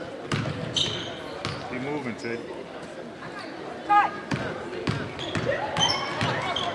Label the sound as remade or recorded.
recorded